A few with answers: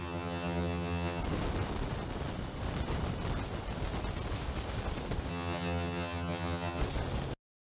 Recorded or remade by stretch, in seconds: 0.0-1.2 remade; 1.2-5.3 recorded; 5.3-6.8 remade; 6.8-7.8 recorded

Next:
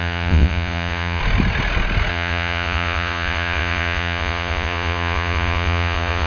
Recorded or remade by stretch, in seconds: 0.0-1.2 remade; 1.2-2.1 recorded; 2.1-6.3 remade

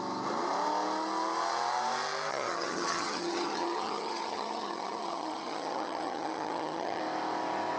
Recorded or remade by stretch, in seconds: 0.0-2.3 recorded; 2.3-7.0 remade; 7.0-7.8 recorded

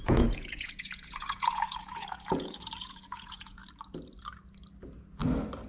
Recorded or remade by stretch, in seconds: 0.0-3.6 remade; 3.6-5.7 recorded

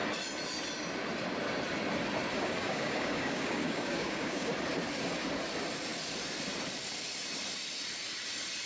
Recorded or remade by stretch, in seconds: 0.0-2.3 recorded; 2.3-4.5 remade; 4.5-8.7 recorded